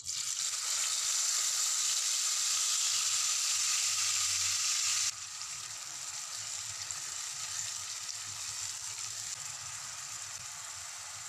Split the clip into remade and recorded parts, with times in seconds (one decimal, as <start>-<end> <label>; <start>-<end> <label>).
0.0-4.9 recorded; 4.9-5.6 remade; 5.6-11.3 recorded